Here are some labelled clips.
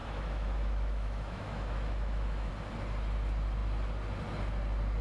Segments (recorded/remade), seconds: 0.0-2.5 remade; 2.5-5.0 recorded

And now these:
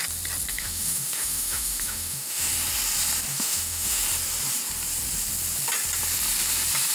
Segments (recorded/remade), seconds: 0.0-0.5 recorded; 0.5-2.5 remade; 2.5-3.3 recorded; 3.3-4.0 remade; 4.0-6.9 recorded

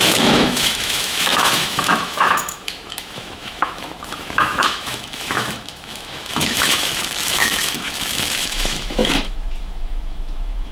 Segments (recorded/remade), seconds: 0.0-10.7 remade

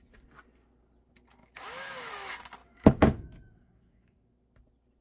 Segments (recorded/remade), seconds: 0.0-1.4 recorded; 1.4-2.1 remade; 2.1-2.6 recorded; 2.6-4.4 remade; 4.4-5.0 recorded